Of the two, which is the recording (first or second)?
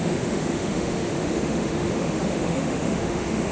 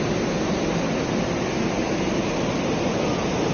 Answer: second